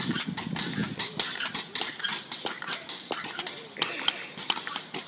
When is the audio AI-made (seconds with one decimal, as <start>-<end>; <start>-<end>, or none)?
none